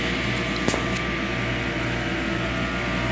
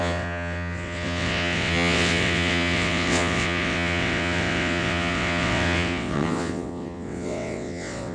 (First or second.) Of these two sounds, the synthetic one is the second